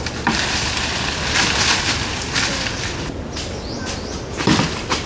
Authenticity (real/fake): real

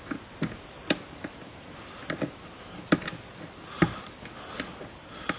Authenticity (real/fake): real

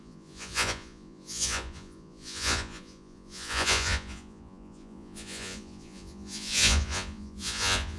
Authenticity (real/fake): fake